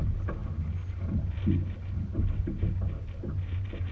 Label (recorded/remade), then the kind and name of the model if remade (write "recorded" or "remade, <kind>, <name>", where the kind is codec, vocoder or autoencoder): recorded